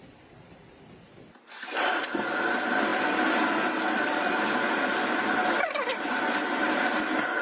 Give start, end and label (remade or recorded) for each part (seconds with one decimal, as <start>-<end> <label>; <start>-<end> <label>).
0.0-7.4 recorded